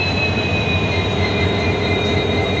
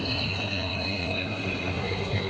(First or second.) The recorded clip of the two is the first